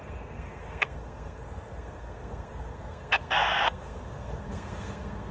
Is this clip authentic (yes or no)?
no